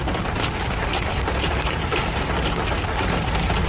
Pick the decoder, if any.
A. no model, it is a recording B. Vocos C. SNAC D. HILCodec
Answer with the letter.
A